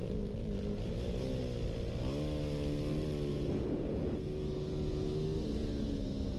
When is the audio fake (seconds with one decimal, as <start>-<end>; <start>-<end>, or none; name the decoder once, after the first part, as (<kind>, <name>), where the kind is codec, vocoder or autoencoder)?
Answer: 3.3-5.1 (vocoder, Vocos)